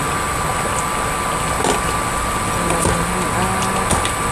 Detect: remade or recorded recorded